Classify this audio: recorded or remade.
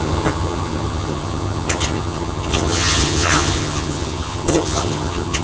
remade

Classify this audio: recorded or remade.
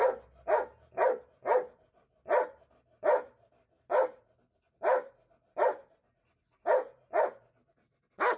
recorded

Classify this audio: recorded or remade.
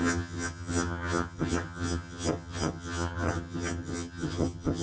remade